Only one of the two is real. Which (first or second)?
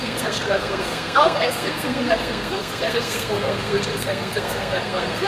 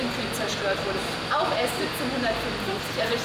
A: second